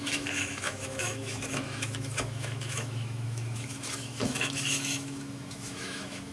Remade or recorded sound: remade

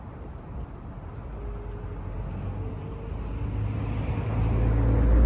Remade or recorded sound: recorded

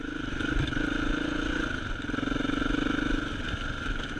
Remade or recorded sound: recorded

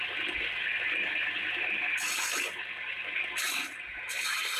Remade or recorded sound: recorded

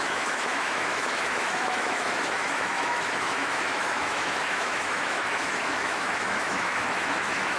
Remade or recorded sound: remade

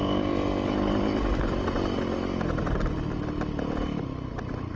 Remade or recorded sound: recorded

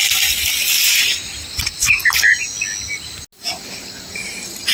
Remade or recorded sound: recorded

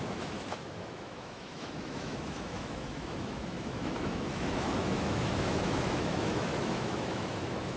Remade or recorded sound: remade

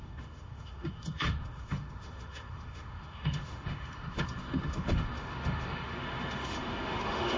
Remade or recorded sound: remade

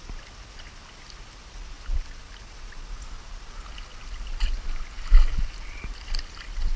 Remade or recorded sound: recorded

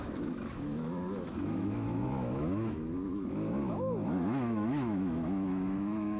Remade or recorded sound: remade